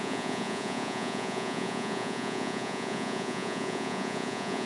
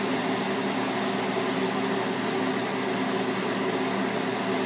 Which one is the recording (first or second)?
second